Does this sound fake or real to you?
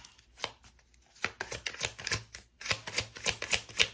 real